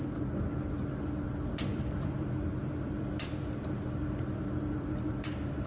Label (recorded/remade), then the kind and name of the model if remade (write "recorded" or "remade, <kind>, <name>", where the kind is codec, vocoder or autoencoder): remade, vocoder, BigVGAN v2